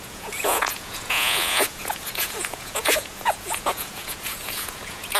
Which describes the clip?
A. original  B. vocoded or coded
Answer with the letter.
B